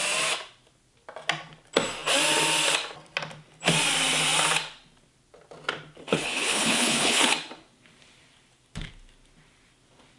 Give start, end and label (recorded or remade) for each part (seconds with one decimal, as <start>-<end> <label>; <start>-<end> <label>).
0.0-6.0 recorded; 6.0-7.3 remade; 7.3-10.2 recorded